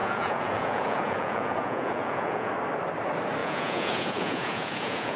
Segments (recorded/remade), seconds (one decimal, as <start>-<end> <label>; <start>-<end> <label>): 0.0-2.5 remade; 2.5-3.4 recorded; 3.4-5.2 remade